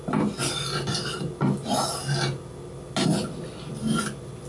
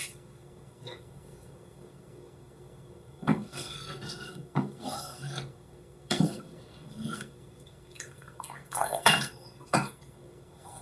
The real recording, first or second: first